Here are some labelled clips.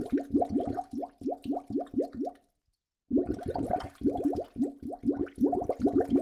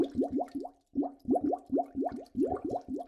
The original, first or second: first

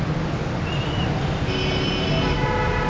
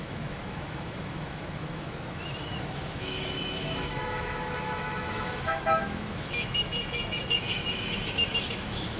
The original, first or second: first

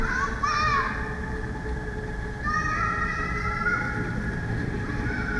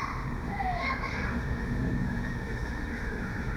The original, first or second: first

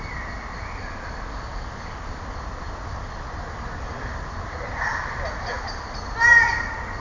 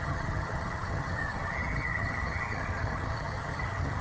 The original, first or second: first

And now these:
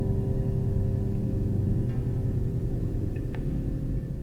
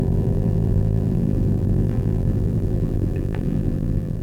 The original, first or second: first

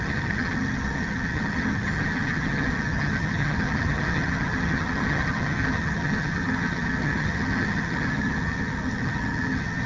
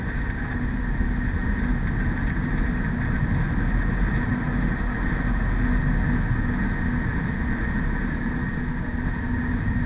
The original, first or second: second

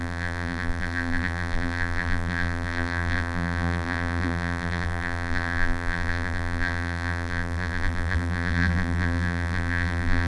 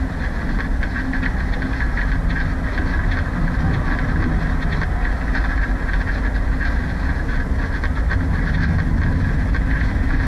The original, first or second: second